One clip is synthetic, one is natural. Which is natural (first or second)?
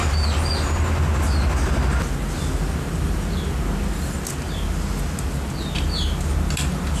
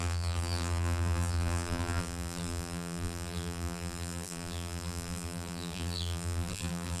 first